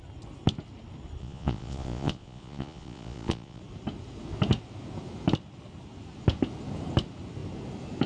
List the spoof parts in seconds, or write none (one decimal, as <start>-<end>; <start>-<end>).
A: 1.2-3.6